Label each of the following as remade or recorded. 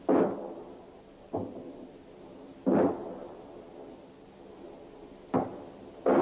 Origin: recorded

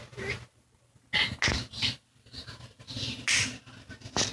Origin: recorded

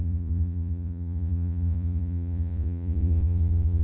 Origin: remade